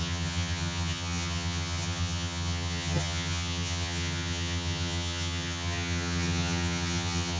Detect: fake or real fake